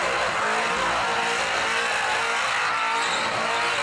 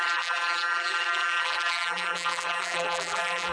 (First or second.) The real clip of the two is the first